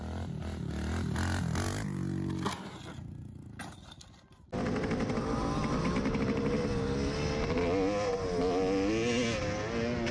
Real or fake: real